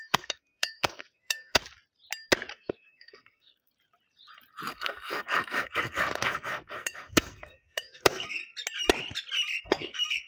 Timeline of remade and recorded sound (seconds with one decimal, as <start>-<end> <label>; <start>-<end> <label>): 0.0-1.6 remade; 1.6-2.5 recorded; 2.5-3.7 remade; 3.7-4.7 recorded; 4.7-8.4 remade; 8.4-9.6 recorded; 9.6-10.3 remade